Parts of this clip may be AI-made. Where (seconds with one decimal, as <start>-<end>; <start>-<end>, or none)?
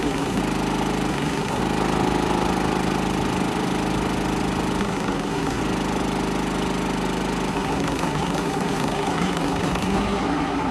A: 0.0-0.4; 1.1-1.6; 4.8-5.6; 7.5-10.7